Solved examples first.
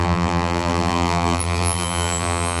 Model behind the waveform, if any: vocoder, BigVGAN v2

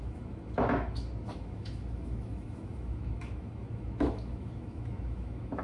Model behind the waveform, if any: autoencoder, DAC-VAE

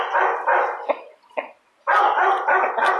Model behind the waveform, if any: none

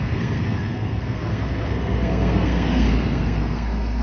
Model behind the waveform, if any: codec, SNAC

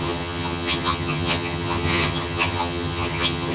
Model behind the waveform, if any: vocoder, HiFi-GAN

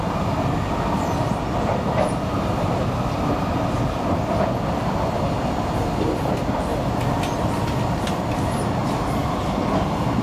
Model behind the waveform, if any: none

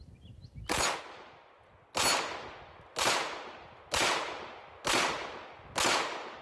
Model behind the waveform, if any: none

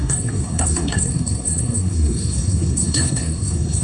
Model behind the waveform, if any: codec, SNAC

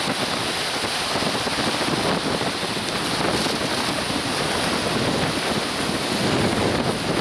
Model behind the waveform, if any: none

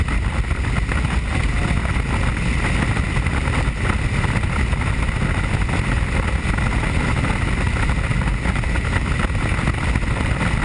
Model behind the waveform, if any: none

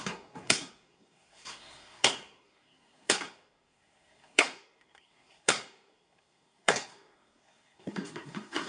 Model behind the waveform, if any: codec, SNAC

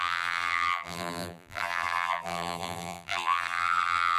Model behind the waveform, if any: vocoder, BigVGAN v2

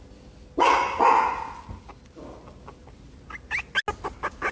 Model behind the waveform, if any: none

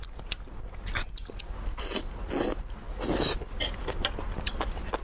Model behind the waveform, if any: none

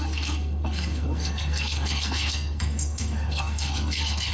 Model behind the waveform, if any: codec, SNAC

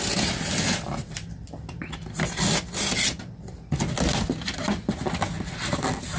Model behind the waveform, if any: none